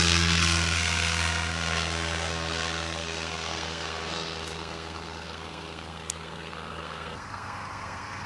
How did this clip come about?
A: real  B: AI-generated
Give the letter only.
B